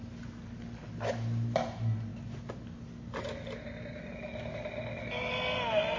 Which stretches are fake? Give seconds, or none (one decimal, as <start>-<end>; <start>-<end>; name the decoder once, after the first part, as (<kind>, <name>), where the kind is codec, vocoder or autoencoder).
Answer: none